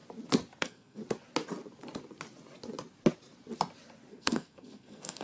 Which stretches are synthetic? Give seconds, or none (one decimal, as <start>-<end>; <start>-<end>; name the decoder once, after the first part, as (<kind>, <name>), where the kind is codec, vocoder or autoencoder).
0.6-1.0 (codec, SNAC); 4.1-5.2